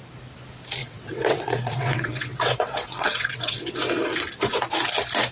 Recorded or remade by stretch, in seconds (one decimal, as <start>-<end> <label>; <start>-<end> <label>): 0.0-0.8 recorded; 0.8-3.7 remade; 3.7-5.3 recorded

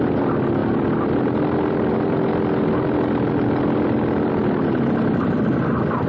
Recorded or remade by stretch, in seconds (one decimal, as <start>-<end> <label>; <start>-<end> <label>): 0.0-6.1 recorded

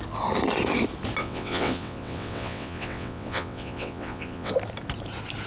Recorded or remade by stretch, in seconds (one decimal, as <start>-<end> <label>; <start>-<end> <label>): 0.0-1.2 recorded; 1.2-4.5 remade; 4.5-5.5 recorded

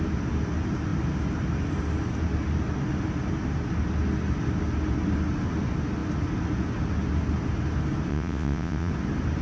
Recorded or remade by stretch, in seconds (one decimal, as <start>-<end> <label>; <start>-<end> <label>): 0.0-8.1 recorded; 8.1-8.9 remade; 8.9-9.4 recorded

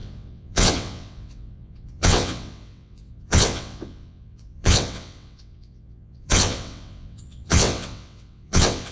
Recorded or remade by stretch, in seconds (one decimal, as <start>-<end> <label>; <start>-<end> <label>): 0.0-8.9 remade

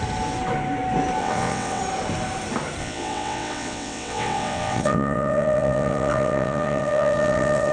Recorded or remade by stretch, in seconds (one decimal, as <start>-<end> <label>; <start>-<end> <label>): 0.0-1.2 recorded; 1.2-1.8 remade; 1.8-2.8 recorded; 2.8-7.7 remade

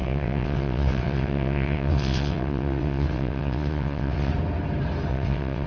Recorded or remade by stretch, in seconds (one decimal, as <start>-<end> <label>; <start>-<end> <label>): 0.0-4.3 remade; 4.3-5.1 recorded; 5.1-5.7 remade